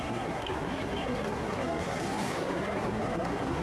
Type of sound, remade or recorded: remade